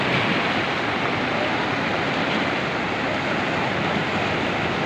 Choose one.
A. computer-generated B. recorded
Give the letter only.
B